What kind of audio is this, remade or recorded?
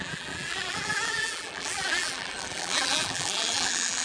remade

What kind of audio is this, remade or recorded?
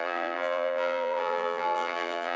remade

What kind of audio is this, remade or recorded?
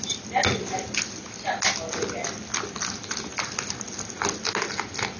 recorded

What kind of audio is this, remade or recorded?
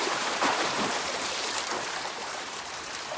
remade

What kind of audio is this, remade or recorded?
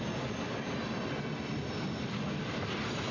recorded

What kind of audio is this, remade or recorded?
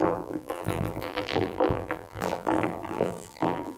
remade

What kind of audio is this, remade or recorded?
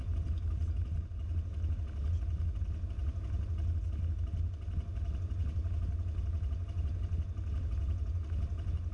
recorded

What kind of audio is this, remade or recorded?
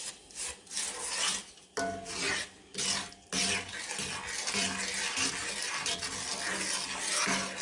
recorded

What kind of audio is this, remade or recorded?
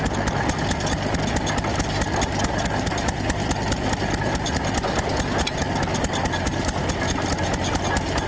recorded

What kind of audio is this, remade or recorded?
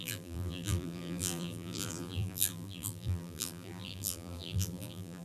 remade